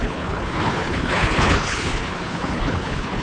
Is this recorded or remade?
remade